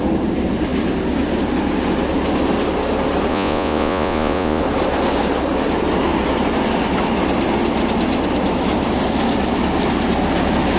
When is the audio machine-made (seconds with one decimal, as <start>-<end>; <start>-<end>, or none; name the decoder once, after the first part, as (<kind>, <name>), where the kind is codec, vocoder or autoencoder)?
3.3-4.6 (vocoder, Vocos)